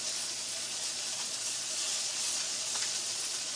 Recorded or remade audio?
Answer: remade